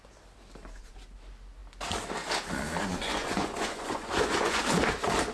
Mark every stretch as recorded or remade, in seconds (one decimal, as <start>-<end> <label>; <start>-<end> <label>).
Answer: 0.0-2.9 recorded; 2.9-4.6 remade; 4.6-5.3 recorded

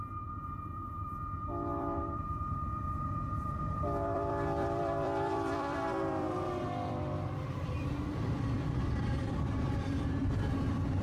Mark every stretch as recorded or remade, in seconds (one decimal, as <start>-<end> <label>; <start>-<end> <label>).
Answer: 0.0-11.0 remade

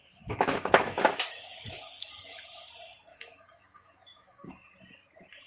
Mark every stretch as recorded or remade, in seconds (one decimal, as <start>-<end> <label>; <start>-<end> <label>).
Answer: 0.0-2.7 remade; 2.7-3.1 recorded; 3.1-4.5 remade; 4.5-5.5 recorded

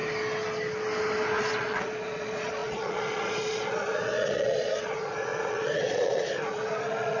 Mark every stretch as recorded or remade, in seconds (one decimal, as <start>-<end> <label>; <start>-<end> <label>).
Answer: 0.0-1.4 recorded; 1.4-7.2 remade

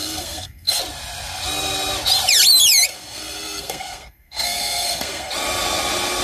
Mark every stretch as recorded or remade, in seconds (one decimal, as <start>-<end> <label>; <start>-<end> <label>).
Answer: 0.0-0.8 remade; 0.8-2.9 recorded; 2.9-5.3 remade; 5.3-6.2 recorded